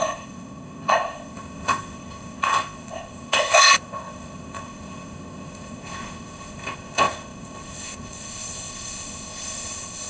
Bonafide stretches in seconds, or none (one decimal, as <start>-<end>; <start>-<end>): none